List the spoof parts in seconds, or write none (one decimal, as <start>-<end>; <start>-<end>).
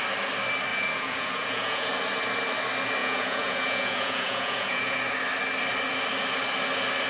0.7-1.9; 3.0-5.0